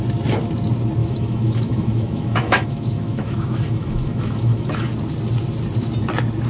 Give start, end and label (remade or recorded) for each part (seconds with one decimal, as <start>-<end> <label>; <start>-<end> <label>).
0.0-1.0 recorded; 1.0-4.9 remade; 4.9-6.5 recorded